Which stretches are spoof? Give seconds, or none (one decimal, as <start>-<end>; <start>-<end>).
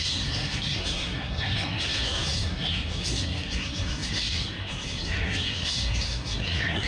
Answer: 0.0-6.9